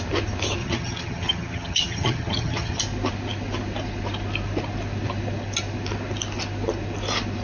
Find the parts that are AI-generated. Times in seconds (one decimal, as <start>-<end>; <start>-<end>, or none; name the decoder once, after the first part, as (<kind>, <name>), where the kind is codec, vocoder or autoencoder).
0.6-2.8 (vocoder, HiFi-GAN)